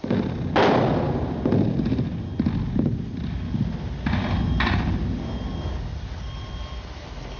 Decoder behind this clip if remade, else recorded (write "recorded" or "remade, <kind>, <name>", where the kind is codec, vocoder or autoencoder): recorded